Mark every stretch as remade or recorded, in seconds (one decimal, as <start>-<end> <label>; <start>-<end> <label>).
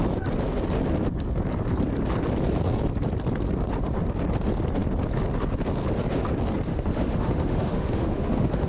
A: 0.0-6.7 recorded; 6.7-8.7 remade